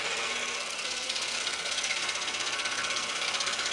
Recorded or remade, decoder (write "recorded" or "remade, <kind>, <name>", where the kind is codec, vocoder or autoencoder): remade, codec, SNAC